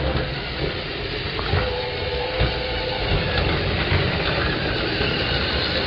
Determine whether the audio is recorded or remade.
recorded